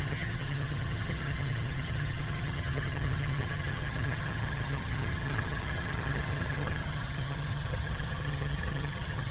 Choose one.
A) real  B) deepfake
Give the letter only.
B